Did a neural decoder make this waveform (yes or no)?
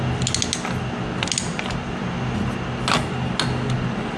no